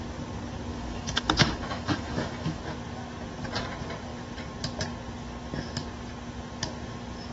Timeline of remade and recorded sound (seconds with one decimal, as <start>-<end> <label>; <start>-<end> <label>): 0.0-0.7 recorded; 0.7-2.6 remade; 2.6-7.3 recorded